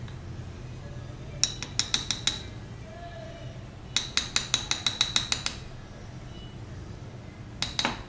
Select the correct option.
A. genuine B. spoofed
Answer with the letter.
A